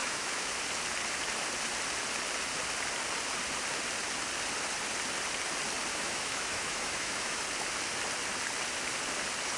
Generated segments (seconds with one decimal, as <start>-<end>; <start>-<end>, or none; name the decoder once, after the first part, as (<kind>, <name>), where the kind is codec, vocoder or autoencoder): 0.0-0.5 (autoencoder, DAC-VAE); 5.9-7.4